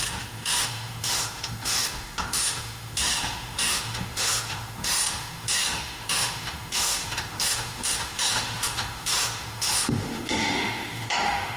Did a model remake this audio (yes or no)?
yes